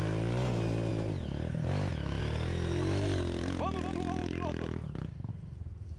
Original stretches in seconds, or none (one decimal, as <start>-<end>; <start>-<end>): 0.0-4.2; 5.3-6.0